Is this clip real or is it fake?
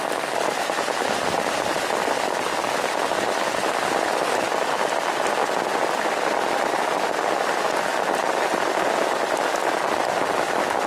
fake